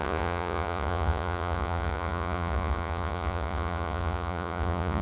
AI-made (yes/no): yes